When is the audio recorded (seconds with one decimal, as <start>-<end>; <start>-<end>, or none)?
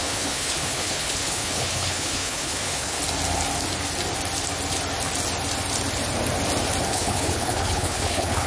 3.0-6.9